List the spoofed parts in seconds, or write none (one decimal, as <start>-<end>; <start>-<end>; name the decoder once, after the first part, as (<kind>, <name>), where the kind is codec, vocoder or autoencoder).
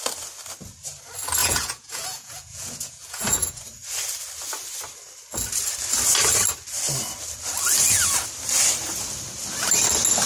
1.4-3.6 (vocoder, Vocos)